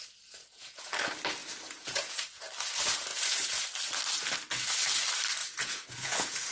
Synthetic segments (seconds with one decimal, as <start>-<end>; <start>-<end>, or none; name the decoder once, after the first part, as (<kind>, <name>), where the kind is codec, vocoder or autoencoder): 0.4-0.9 (vocoder, Vocos); 1.4-2.4; 3.1-3.6; 5.4-6.5